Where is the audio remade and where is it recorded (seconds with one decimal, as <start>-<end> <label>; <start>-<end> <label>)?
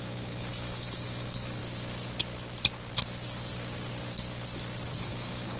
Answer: 0.0-1.6 remade; 1.6-5.0 recorded; 5.0-5.6 remade